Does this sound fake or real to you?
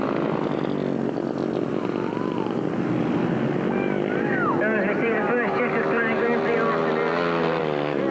real